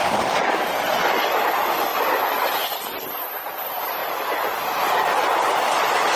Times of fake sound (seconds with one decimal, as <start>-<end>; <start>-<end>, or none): 0.0-0.6